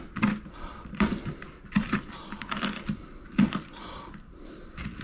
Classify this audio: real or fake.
fake